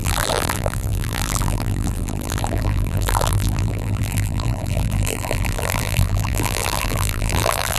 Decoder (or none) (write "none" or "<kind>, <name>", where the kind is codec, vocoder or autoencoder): vocoder, BigVGAN v2